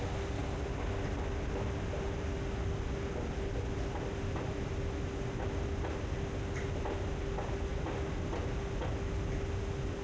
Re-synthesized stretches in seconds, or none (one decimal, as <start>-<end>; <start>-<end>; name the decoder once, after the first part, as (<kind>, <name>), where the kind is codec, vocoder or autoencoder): none